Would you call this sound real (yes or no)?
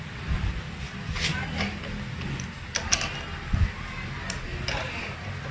yes